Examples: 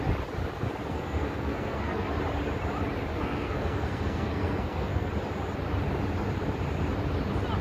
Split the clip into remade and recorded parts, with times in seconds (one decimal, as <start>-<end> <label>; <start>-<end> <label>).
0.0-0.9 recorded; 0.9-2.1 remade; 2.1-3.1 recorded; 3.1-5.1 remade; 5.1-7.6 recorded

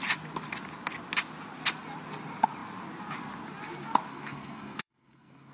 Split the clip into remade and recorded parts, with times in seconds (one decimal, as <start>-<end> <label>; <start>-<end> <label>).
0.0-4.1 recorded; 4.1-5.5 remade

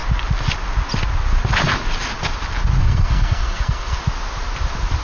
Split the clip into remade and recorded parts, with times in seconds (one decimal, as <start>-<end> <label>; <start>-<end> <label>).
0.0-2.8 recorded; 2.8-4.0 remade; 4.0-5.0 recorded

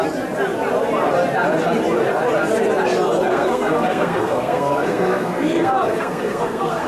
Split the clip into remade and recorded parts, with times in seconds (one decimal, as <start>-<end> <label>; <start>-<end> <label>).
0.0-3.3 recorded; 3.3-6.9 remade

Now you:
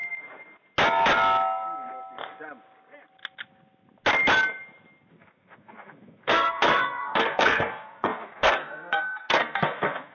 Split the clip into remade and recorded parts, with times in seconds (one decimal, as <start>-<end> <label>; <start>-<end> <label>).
0.0-5.1 recorded; 5.1-10.1 remade